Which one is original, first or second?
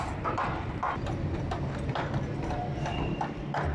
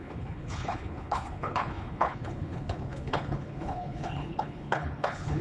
first